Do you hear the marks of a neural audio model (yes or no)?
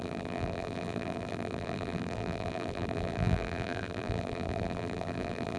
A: yes